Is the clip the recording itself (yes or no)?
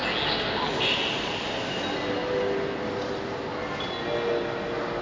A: yes